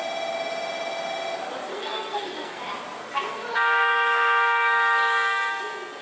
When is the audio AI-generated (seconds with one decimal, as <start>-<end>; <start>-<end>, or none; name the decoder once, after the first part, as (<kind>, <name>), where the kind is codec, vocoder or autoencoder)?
1.7-2.6 (codec, SNAC); 3.0-5.6